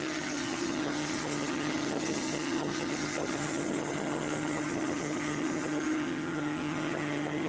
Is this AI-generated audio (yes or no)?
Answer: yes